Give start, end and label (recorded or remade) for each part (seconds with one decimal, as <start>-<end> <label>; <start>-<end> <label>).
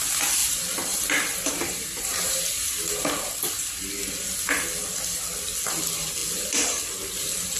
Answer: 0.0-0.4 recorded; 0.4-3.3 remade; 3.3-7.6 recorded